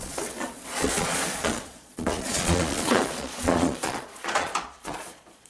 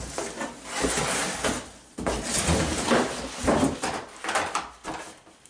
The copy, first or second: first